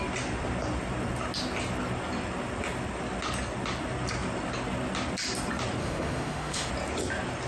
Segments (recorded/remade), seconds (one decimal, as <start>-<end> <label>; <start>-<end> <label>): 0.0-5.8 recorded; 5.8-6.7 remade; 6.7-7.5 recorded